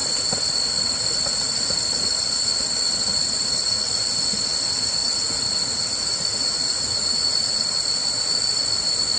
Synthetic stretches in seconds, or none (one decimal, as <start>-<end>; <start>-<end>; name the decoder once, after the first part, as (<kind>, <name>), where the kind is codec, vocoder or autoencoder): 3.1-3.9 (vocoder, Vocos); 5.0-7.9